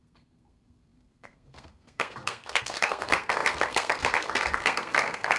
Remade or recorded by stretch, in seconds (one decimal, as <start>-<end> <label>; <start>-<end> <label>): 0.0-5.4 remade